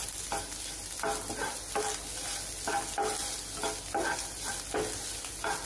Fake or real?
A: real